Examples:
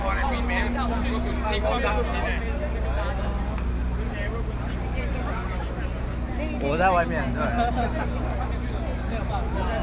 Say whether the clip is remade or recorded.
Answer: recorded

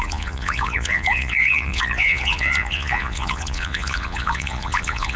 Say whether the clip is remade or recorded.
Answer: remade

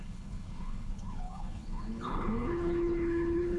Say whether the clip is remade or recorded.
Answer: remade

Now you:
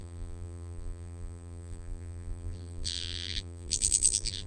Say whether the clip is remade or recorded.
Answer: remade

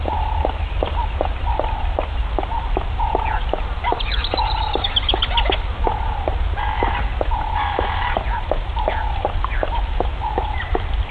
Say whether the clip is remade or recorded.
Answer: recorded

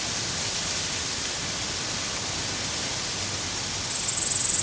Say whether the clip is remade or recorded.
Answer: recorded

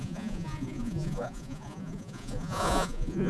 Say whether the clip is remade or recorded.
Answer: remade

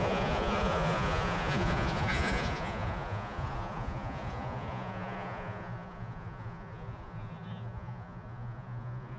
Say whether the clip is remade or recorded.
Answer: remade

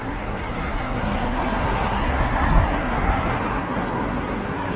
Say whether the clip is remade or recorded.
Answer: remade